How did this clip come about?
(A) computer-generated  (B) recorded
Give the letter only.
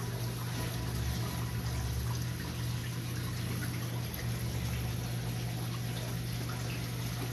B